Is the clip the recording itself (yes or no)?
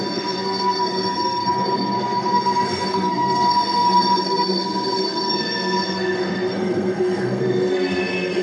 no